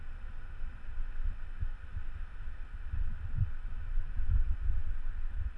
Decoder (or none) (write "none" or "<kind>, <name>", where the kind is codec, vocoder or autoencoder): none